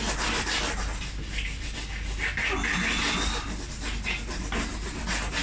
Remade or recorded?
recorded